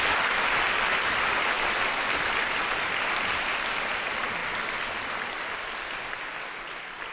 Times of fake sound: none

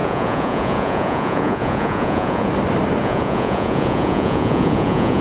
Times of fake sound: 0.0-2.5 (vocoder, Vocos); 3.0-5.2

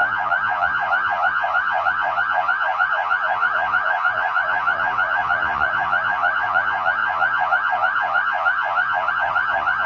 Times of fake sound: 0.0-9.9 (vocoder, Vocos)

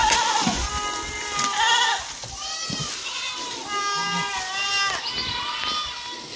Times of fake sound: 0.0-0.7 (vocoder, Vocos)